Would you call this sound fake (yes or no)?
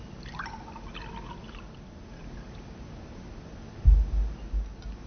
no